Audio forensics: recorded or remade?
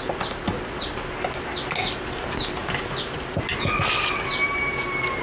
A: recorded